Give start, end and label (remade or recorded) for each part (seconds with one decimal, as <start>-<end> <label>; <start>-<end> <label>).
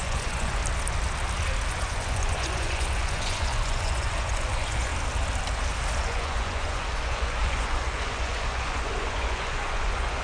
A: 0.0-0.6 remade; 0.6-1.7 recorded; 1.7-4.9 remade; 4.9-6.0 recorded; 6.0-10.2 remade